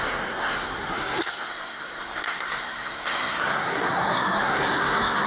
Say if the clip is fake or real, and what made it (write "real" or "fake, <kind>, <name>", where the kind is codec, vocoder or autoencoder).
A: fake, codec, SNAC